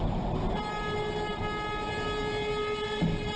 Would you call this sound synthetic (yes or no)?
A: no